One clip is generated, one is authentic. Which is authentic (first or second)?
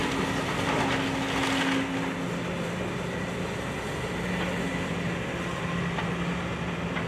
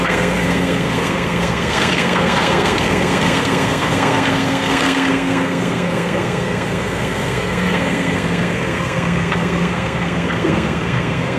first